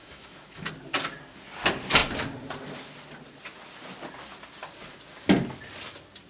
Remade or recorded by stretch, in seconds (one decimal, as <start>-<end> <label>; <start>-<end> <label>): 0.0-0.7 remade; 0.7-6.3 recorded